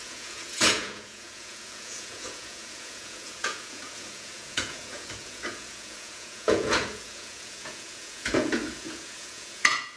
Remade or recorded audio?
remade